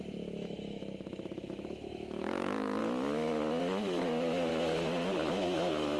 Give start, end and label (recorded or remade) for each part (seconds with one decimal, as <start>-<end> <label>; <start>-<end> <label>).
0.0-2.8 remade; 2.8-3.6 recorded; 3.6-4.5 remade; 4.5-5.3 recorded; 5.3-6.0 remade